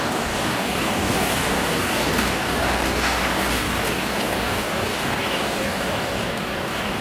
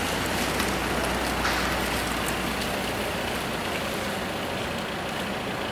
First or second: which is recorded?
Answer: second